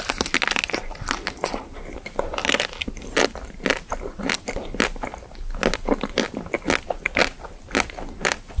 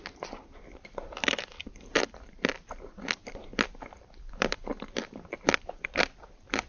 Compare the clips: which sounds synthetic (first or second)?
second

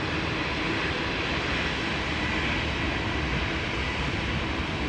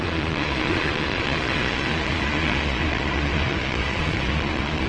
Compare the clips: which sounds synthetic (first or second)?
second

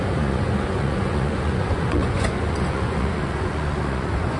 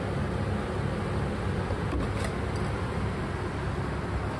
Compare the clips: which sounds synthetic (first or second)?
first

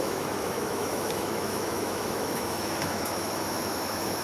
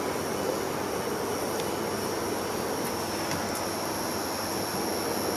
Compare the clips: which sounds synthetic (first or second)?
first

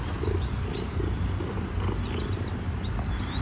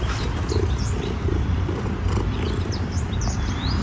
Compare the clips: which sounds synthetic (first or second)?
second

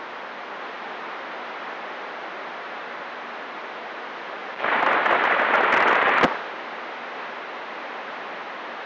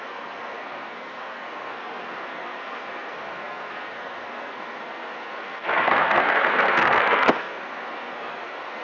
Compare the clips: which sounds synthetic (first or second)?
second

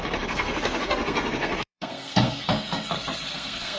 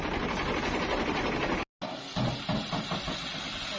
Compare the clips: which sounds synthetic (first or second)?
first